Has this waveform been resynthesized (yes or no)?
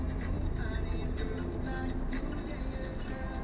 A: no